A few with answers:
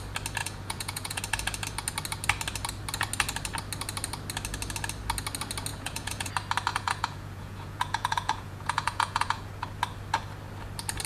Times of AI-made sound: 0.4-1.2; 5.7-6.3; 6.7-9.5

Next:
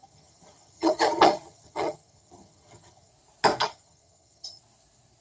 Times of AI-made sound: 0.0-3.1; 3.6-4.6

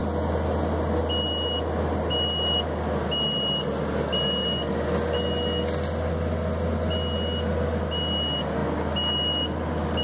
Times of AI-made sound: none